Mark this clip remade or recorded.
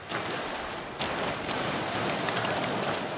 recorded